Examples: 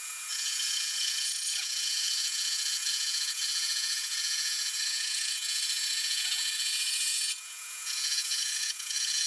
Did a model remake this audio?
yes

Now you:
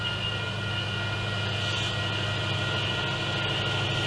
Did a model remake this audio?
no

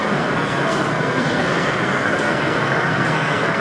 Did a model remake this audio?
yes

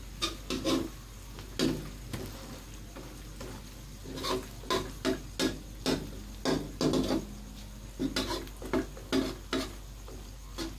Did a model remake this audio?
no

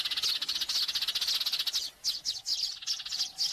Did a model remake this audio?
no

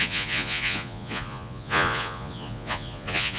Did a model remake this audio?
yes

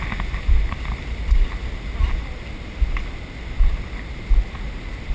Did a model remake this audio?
no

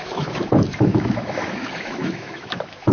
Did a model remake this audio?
yes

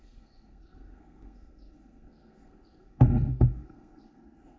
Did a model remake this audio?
yes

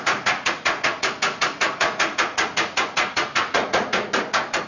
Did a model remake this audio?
yes